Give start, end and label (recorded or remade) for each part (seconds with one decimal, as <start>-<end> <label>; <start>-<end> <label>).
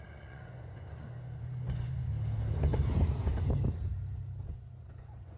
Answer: 0.0-2.1 remade; 2.1-2.9 recorded; 2.9-3.3 remade; 3.3-4.5 recorded; 4.5-5.4 remade